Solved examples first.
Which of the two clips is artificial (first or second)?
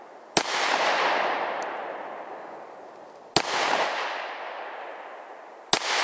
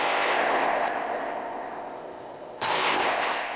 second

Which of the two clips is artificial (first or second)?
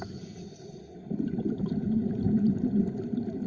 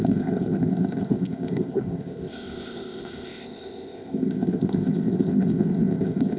second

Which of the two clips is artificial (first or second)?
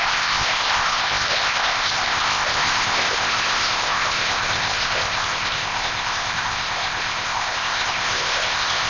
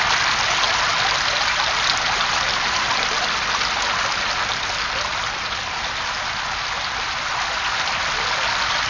first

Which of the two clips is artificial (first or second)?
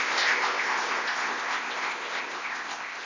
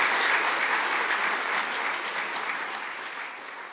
first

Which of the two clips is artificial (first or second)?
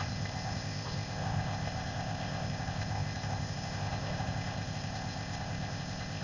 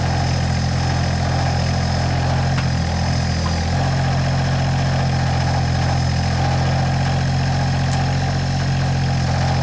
first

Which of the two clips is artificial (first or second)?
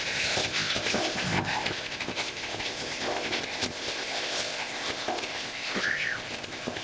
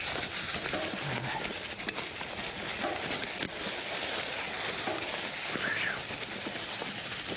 first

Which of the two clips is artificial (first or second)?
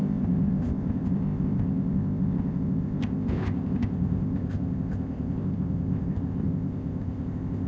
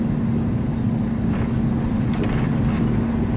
first